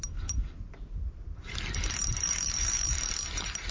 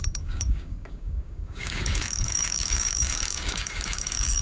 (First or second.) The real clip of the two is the first